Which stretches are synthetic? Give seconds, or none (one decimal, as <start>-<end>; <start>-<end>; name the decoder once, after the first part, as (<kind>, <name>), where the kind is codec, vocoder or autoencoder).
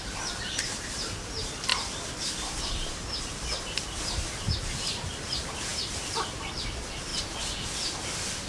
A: 0.0-1.7 (vocoder, BigVGAN v2); 3.3-7.1; 7.6-8.5